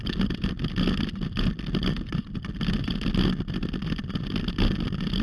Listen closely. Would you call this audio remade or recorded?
recorded